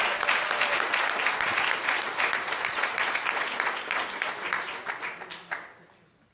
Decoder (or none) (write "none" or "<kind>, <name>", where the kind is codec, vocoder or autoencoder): none